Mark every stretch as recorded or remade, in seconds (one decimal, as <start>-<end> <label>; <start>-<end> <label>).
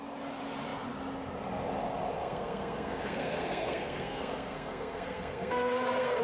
0.0-2.2 recorded; 2.2-6.2 remade